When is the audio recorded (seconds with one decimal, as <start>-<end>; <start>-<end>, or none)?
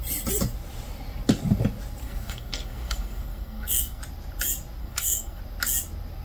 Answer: 0.0-2.0; 4.0-4.8; 5.4-6.2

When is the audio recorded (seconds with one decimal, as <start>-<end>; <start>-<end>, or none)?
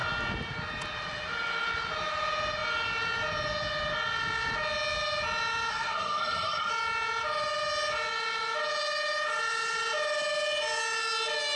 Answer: 0.0-5.7; 6.7-11.6